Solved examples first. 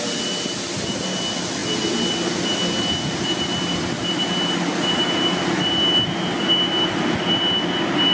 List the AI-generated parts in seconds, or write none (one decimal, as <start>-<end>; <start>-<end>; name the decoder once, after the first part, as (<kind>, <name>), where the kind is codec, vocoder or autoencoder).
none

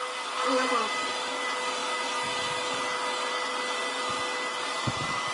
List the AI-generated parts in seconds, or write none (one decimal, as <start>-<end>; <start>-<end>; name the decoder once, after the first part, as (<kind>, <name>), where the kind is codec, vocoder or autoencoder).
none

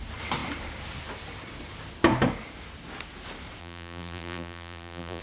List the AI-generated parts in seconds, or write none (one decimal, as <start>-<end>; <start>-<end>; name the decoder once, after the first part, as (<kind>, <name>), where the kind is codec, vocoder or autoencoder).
3.6-5.2 (vocoder, BigVGAN v2)